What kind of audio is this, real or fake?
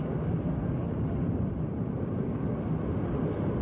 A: real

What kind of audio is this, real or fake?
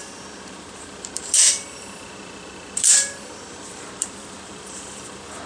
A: fake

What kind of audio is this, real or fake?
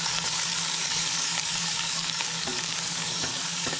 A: fake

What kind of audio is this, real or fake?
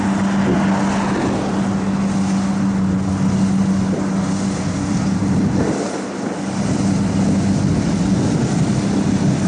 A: real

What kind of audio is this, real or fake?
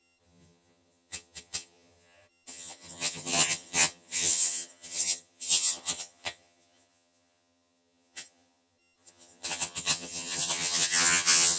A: fake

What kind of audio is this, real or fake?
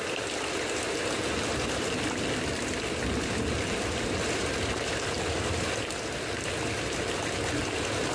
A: real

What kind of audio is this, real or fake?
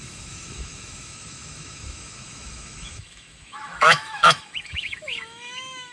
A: fake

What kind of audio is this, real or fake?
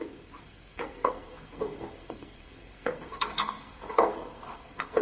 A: fake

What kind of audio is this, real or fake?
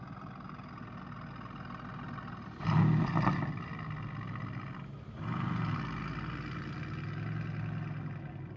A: real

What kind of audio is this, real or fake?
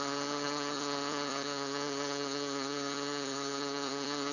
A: fake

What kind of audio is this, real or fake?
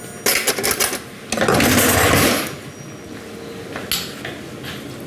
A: real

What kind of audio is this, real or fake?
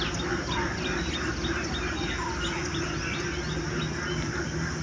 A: real